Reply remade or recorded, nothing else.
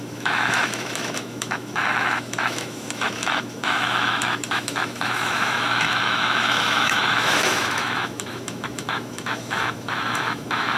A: remade